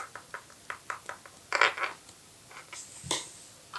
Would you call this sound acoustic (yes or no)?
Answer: yes